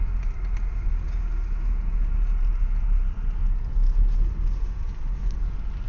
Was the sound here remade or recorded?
recorded